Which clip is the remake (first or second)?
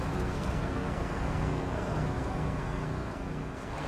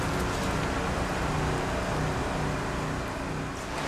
first